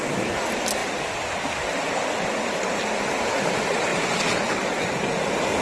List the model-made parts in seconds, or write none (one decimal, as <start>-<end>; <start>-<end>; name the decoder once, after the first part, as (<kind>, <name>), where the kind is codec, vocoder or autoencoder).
none